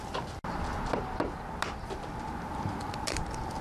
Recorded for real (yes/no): yes